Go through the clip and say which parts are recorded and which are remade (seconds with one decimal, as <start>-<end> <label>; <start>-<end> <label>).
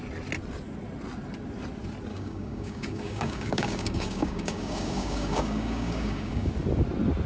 0.0-2.1 recorded; 2.1-6.5 remade; 6.5-7.3 recorded